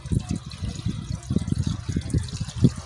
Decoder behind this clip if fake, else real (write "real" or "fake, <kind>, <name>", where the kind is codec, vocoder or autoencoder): real